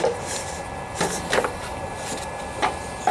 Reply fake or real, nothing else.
fake